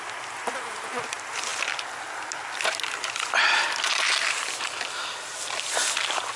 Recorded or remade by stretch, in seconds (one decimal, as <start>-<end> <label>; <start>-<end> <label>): 0.0-6.4 recorded